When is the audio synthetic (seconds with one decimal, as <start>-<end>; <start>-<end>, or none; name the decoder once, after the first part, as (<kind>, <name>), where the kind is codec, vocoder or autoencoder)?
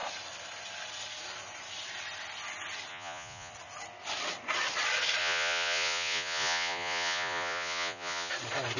2.9-3.5 (vocoder, Vocos); 5.2-8.3